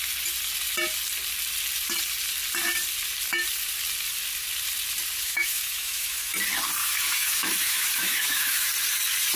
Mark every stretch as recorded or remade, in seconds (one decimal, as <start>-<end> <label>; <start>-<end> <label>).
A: 0.0-5.2 recorded; 5.2-6.3 remade; 6.3-6.8 recorded; 6.8-8.7 remade; 8.7-9.4 recorded